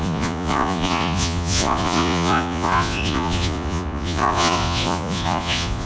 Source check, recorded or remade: remade